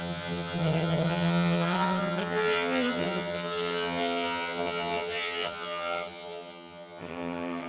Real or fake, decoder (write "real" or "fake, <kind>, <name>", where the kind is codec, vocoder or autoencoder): fake, vocoder, HiFi-GAN